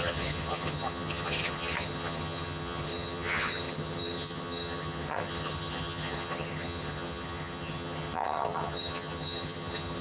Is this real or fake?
fake